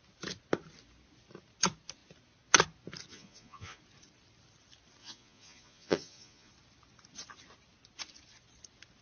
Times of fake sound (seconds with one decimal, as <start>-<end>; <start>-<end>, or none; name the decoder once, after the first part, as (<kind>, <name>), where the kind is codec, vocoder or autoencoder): 3.1-3.8 (vocoder, Vocos); 5.0-6.5